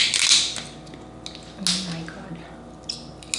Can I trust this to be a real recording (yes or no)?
yes